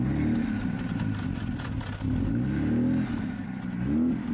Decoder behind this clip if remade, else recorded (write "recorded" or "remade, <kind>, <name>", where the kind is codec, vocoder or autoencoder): recorded